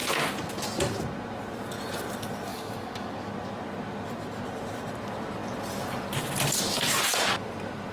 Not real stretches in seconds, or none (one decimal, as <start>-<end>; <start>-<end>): 2.5-3.3